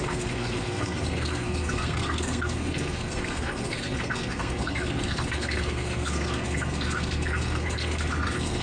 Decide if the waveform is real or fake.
fake